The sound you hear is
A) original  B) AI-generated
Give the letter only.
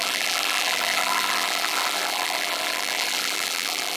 B